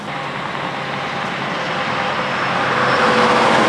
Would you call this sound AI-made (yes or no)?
no